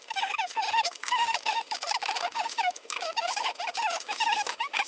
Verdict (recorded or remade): remade